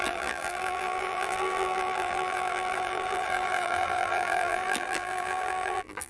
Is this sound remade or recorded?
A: remade